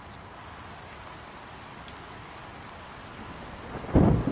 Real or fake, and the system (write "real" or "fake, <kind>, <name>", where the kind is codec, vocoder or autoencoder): real